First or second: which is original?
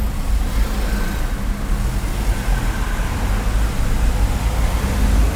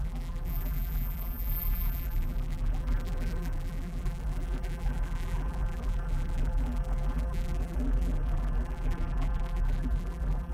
first